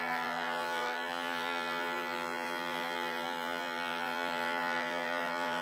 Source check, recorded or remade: remade